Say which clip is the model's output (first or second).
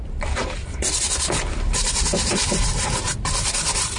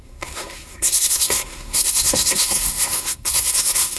second